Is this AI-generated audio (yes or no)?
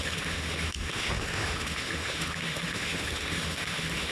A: yes